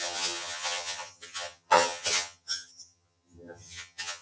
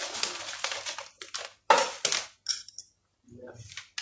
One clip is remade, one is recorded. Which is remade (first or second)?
first